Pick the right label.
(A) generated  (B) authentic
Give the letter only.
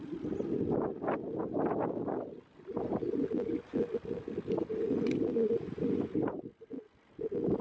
B